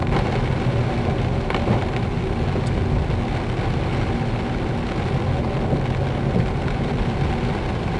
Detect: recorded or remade recorded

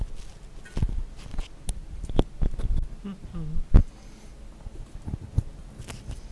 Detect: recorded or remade recorded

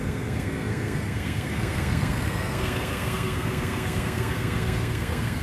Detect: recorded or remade remade